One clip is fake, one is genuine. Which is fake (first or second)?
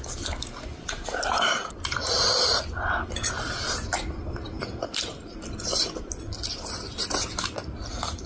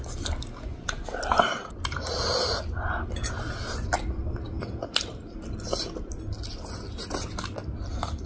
first